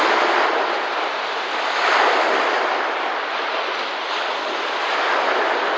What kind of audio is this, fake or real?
fake